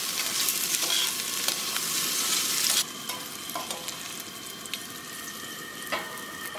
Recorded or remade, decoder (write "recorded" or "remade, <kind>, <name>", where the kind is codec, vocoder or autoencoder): recorded